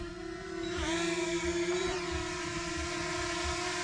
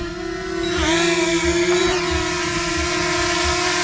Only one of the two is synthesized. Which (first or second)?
first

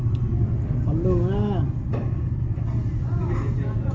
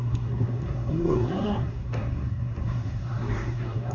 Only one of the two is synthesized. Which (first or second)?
second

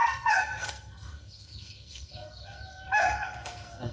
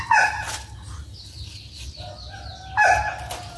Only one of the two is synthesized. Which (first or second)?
first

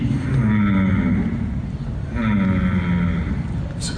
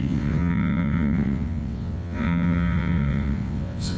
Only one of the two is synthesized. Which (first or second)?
second